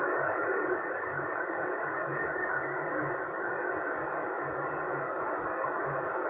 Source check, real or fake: fake